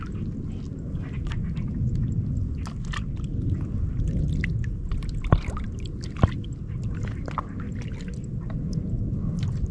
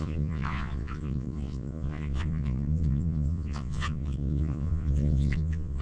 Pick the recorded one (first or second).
first